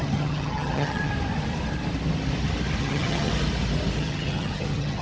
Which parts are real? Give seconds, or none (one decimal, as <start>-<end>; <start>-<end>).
1.1-2.8; 3.3-4.0